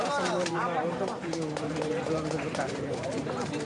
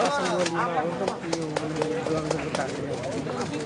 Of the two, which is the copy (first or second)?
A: first